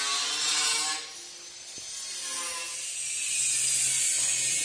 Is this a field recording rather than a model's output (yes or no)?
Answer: yes